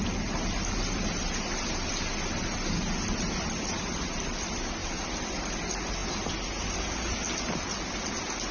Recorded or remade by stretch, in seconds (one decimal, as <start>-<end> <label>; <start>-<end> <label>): 0.0-8.5 recorded